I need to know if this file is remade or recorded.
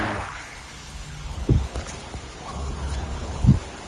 remade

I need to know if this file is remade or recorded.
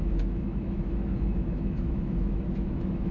remade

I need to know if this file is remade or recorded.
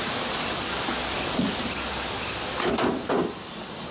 recorded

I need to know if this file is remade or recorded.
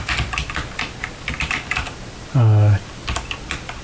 recorded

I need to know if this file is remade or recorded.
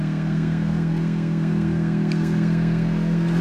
remade